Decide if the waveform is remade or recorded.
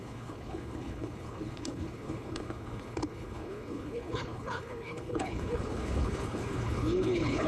remade